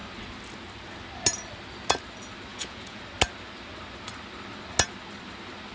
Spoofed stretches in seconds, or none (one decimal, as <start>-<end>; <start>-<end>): 2.5-3.0